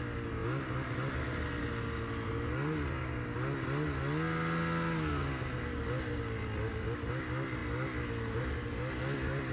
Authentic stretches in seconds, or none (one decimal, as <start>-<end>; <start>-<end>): 0.0-9.5